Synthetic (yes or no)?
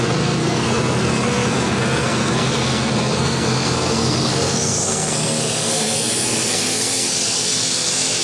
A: yes